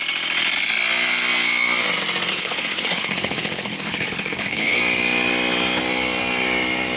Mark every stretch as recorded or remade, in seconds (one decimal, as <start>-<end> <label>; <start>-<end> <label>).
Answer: 0.0-2.3 recorded; 2.3-4.8 remade; 4.8-7.0 recorded